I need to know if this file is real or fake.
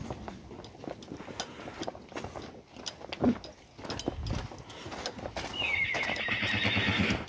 real